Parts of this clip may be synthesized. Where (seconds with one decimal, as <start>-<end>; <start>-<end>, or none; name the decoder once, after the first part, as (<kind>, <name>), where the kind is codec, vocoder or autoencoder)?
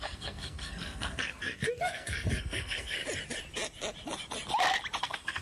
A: 0.0-3.0 (codec, SNAC); 5.0-5.4